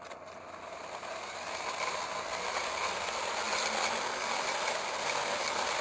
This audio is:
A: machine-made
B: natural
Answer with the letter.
B